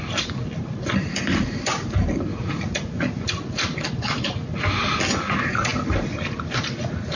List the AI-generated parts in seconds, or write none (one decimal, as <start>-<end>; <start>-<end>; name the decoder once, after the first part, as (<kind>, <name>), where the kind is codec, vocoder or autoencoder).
2.3-3.0 (vocoder, Vocos)

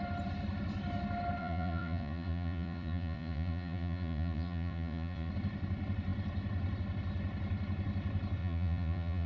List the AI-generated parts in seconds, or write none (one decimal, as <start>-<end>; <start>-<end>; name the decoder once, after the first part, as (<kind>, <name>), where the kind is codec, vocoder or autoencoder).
1.4-5.3 (vocoder, Vocos); 8.4-9.3